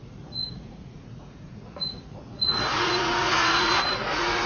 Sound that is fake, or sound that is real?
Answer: fake